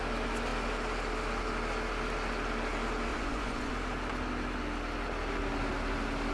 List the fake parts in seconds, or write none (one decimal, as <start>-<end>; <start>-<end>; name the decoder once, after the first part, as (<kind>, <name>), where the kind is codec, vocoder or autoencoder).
3.1-3.7 (vocoder, Vocos)